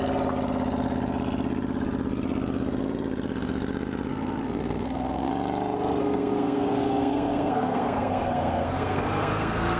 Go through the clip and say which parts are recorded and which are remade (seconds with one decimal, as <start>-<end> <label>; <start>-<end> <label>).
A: 0.0-4.1 recorded; 4.1-5.3 remade; 5.3-6.0 recorded; 6.0-9.8 remade